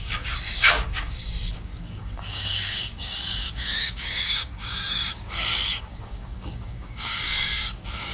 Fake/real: fake